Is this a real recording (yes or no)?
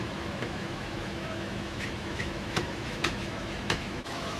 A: no